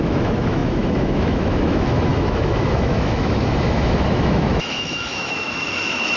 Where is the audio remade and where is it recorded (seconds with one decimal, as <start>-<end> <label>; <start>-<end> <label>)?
0.0-6.2 remade